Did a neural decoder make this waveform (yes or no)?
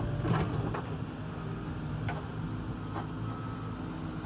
no